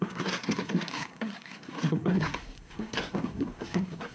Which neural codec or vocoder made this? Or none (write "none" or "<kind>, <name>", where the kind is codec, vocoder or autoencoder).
codec, SNAC